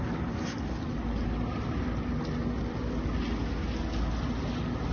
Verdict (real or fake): real